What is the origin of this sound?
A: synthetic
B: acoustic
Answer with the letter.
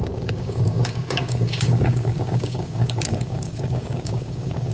A